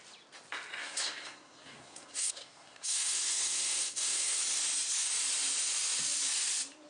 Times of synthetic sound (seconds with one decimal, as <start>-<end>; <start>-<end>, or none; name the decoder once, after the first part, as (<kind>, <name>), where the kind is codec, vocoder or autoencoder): 0.8-4.4 (codec, SNAC)